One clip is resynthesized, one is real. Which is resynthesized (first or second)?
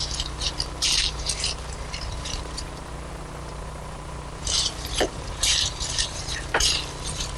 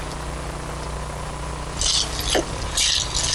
first